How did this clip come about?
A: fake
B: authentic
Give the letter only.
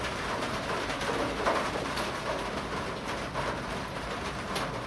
A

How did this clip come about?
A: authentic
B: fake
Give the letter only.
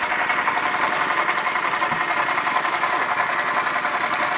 A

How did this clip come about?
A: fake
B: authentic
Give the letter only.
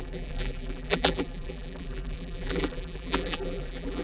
A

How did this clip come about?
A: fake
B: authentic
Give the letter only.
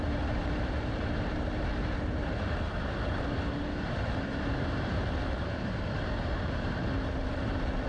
A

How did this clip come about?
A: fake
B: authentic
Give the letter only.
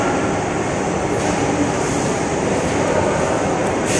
B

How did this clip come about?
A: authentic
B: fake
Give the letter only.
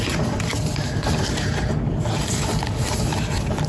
B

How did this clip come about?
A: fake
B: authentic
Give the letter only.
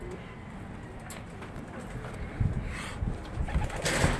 B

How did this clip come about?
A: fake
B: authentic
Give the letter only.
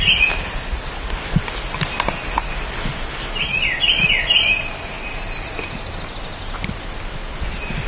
B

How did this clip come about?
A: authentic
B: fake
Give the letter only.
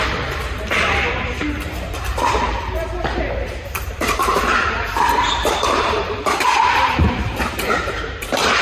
B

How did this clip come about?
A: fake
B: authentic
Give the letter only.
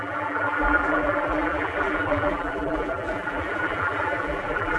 A